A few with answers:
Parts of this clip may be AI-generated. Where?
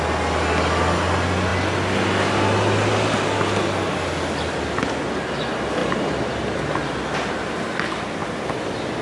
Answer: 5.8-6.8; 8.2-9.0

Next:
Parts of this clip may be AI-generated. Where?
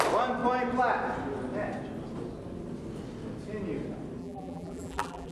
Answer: 4.2-5.3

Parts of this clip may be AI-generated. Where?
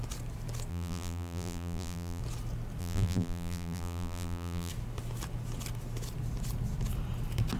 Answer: 0.7-2.2; 2.8-4.7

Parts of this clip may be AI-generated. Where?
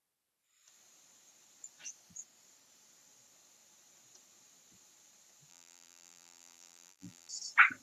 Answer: 5.5-7.3